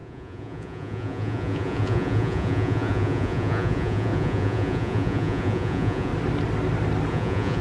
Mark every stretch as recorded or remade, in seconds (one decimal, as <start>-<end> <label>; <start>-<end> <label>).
0.0-6.1 remade; 6.1-7.1 recorded; 7.1-7.6 remade